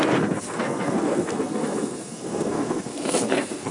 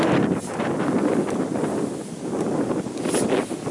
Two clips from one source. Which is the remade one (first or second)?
first